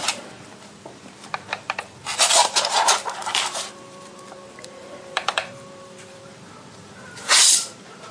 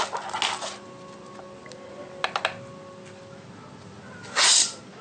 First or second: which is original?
second